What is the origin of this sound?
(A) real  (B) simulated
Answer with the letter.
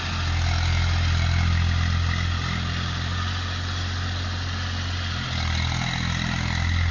A